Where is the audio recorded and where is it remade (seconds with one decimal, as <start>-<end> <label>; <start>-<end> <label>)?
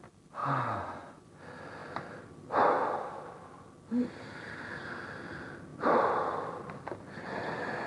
0.0-0.4 recorded; 0.4-1.4 remade; 1.4-7.9 recorded